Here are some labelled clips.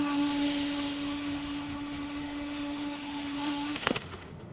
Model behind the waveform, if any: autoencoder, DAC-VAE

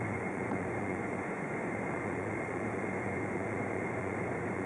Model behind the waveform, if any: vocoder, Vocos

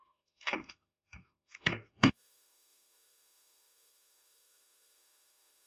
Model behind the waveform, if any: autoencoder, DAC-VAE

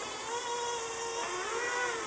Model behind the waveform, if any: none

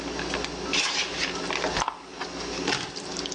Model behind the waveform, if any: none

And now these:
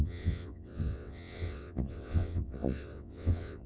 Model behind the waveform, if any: vocoder, WaveNeXt